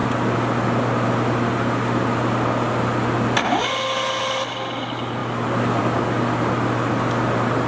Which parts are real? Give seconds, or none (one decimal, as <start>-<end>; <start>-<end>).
0.0-7.7